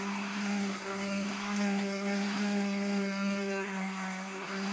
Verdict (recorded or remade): remade